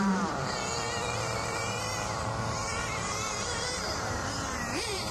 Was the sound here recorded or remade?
remade